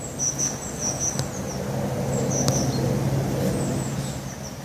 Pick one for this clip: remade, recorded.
recorded